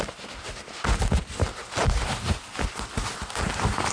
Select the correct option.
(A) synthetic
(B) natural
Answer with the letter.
B